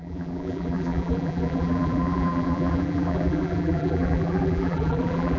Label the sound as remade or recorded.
remade